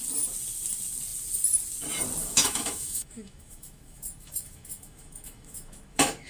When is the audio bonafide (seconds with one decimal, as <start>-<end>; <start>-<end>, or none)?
0.0-2.2